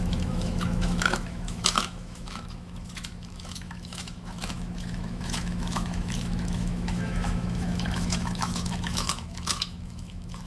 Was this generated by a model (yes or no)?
yes